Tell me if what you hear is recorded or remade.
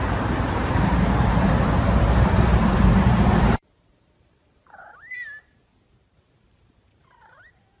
remade